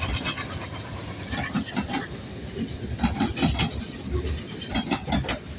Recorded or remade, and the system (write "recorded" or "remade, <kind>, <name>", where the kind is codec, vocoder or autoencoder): recorded